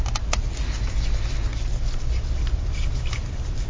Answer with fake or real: real